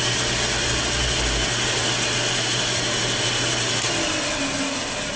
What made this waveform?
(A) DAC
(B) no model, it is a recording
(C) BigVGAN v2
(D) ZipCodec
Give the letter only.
B